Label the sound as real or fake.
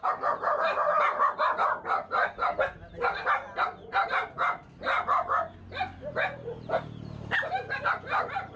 real